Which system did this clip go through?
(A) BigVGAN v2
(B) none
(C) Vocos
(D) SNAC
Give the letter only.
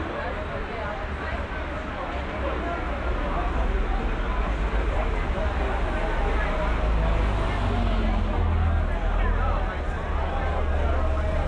B